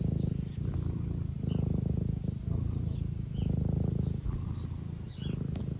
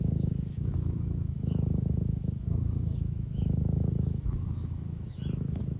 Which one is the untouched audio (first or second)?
first